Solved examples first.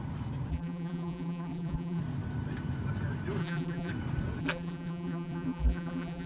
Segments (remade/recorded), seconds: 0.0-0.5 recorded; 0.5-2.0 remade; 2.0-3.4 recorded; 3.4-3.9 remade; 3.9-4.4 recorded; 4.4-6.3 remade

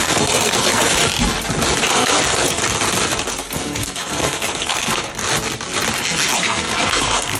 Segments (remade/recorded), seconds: 0.0-1.0 remade; 1.0-1.9 recorded; 1.9-2.6 remade; 2.6-3.3 recorded; 3.3-5.1 remade; 5.1-6.4 recorded; 6.4-7.4 remade

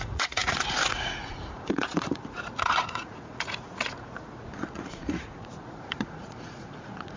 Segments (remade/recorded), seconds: 0.0-7.2 remade